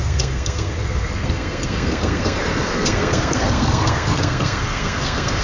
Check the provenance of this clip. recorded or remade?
remade